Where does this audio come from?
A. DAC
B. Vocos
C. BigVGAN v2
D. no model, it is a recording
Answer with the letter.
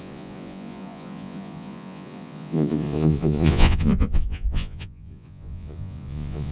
B